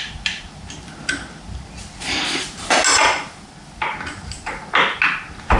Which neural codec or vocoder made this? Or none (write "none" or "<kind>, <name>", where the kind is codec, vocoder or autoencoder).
none